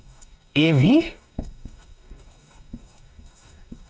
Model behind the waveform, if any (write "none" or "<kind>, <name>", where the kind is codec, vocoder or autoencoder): codec, DAC